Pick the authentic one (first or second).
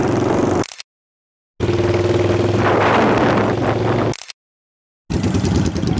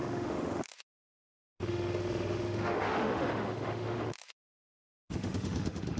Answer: first